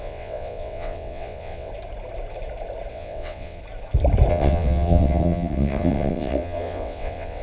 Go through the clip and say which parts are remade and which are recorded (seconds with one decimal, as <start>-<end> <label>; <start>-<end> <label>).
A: 0.0-1.7 remade; 1.7-2.9 recorded; 2.9-3.6 remade; 3.6-4.3 recorded; 4.3-7.4 remade